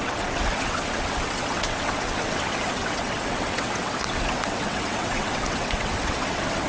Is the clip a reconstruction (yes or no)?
yes